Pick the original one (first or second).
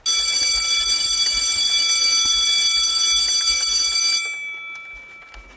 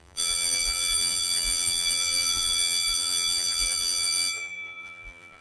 first